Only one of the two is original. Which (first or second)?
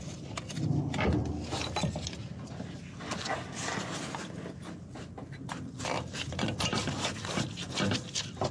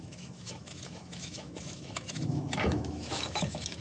first